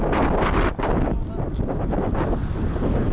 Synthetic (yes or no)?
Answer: no